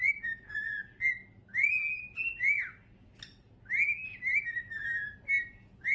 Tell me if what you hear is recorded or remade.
recorded